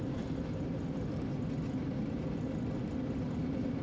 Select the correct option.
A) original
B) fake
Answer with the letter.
A